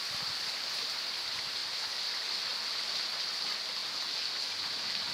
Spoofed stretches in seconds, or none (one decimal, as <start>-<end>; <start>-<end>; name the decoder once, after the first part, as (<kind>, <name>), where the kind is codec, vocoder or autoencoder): none